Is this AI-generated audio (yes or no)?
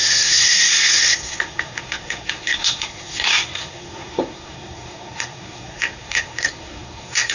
yes